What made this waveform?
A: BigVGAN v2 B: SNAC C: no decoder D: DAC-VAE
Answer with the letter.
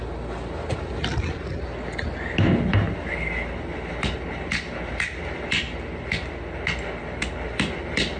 C